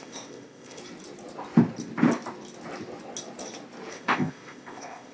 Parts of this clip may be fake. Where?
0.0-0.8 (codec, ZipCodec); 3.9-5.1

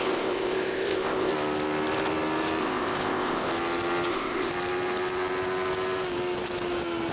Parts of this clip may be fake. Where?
0.0-1.3 (codec, ZipCodec); 2.6-3.5; 4.1-4.5

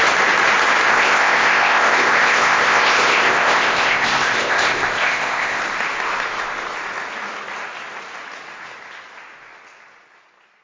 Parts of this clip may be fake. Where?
0.9-5.6 (codec, ZipCodec)

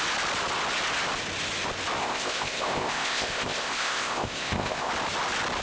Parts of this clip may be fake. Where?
2.0-4.9 (codec, ZipCodec)